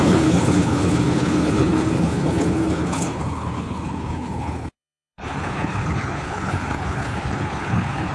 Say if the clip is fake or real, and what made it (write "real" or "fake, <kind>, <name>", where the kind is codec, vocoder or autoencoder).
fake, codec, HILCodec